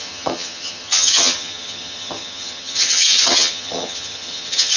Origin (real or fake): fake